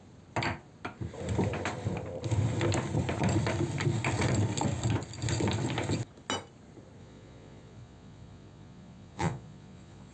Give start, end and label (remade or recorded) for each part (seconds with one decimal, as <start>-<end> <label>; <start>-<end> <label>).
0.0-7.0 recorded; 7.0-10.1 remade